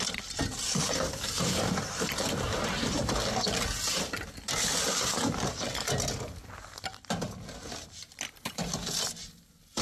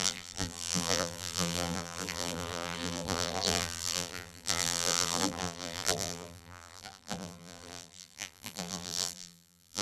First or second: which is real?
first